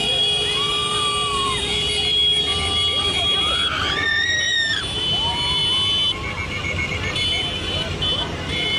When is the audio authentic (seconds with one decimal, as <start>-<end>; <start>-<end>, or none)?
5.6-6.6